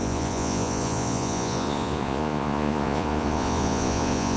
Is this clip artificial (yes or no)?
yes